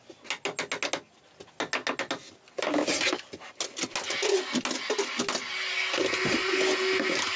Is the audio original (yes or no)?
yes